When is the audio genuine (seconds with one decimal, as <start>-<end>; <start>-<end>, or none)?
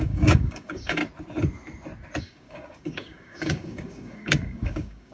1.0-2.2